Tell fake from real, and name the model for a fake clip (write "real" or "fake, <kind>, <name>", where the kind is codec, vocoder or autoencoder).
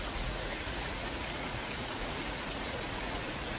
fake, vocoder, Vocos